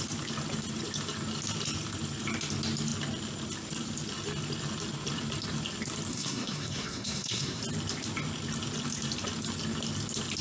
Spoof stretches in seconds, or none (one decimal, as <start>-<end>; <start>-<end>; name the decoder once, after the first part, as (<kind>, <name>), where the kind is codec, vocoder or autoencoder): 6.1-7.6 (codec, SNAC)